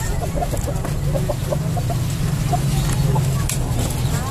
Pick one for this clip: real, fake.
real